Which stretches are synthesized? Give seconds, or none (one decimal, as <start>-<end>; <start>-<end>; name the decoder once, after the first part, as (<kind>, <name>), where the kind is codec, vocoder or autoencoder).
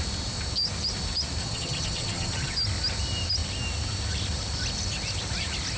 1.4-2.5 (vocoder, HiFi-GAN)